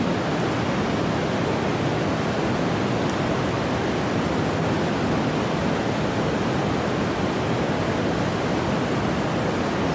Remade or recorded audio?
recorded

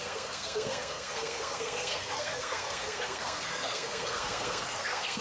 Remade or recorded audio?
remade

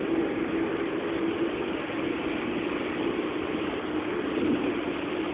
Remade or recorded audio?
recorded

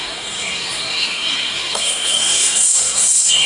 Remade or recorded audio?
remade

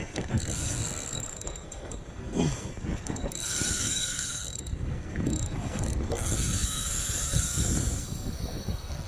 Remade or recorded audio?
remade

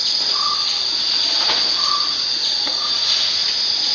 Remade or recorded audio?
recorded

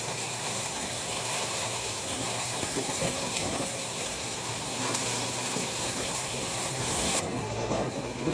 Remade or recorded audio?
remade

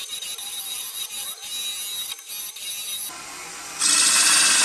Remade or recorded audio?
recorded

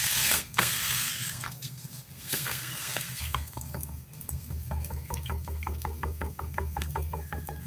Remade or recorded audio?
remade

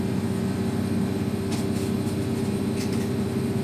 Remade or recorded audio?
recorded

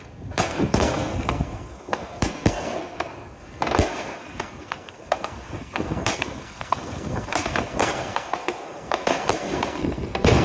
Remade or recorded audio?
remade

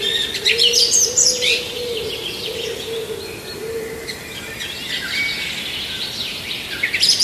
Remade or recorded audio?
recorded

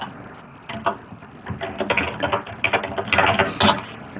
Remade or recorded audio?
recorded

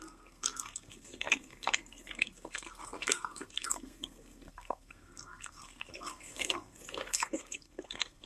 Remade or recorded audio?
remade